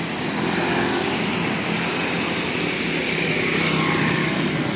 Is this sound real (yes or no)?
yes